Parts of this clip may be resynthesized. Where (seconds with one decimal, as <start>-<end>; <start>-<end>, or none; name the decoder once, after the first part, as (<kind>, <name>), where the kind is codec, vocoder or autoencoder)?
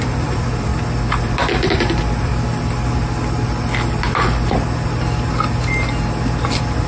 0.0-0.7 (vocoder, BigVGAN v2); 1.2-2.3; 6.4-6.9